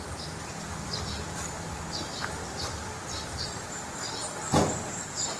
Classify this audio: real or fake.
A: real